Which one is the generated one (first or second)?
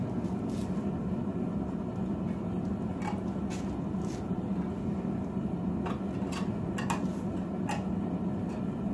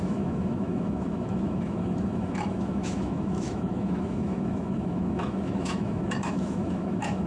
second